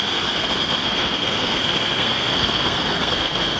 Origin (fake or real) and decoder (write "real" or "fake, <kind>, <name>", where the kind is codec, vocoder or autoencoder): fake, codec, SNAC